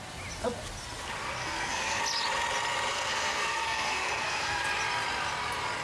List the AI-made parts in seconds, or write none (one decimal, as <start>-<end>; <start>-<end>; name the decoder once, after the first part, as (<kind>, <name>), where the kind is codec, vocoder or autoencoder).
1.4-2.0 (codec, SNAC); 2.9-4.6